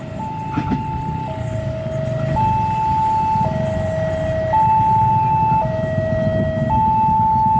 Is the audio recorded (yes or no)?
yes